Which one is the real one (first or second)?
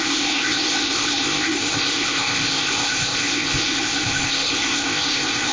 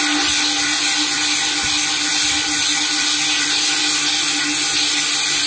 second